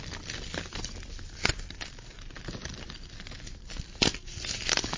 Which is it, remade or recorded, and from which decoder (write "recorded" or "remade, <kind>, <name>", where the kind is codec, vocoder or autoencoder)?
recorded